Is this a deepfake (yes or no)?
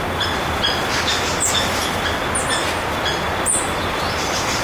no